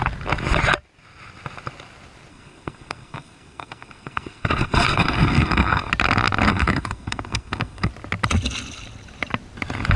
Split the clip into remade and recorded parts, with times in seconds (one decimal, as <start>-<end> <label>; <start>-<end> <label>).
0.0-2.3 recorded; 2.3-5.9 remade; 5.9-6.5 recorded; 6.5-7.9 remade; 7.9-10.0 recorded